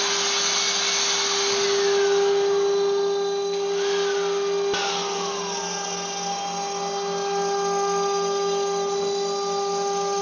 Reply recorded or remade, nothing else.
recorded